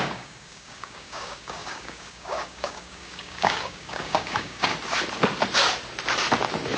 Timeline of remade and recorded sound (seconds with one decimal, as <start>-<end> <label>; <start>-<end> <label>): 0.0-4.7 remade; 4.7-6.8 recorded